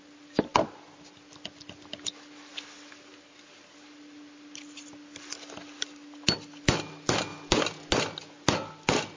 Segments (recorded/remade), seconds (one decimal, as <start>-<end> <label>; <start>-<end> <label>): 0.0-9.2 recorded